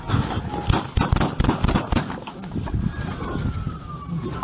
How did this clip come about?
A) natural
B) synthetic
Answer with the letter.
A